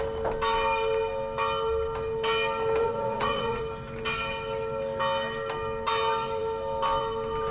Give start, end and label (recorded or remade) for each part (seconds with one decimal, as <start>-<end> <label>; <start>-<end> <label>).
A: 0.0-2.8 recorded; 2.8-3.6 remade; 3.6-7.5 recorded